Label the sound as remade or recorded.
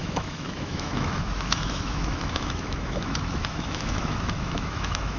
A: remade